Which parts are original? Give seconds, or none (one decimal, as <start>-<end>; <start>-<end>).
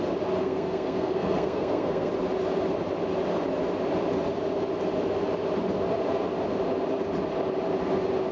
0.0-0.4; 2.1-8.3